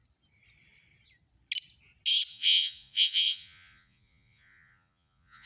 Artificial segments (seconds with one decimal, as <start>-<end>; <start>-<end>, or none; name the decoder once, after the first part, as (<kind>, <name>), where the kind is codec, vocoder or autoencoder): 2.3-5.5 (vocoder, Vocos)